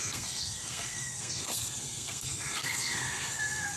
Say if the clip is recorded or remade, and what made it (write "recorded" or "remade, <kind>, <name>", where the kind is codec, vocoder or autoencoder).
remade, codec, SNAC